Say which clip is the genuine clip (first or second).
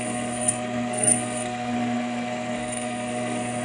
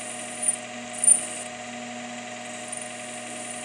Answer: second